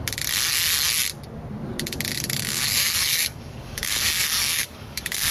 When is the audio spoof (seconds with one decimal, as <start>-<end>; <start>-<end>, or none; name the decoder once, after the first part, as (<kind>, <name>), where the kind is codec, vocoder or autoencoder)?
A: 2.1-5.3 (codec, DAC)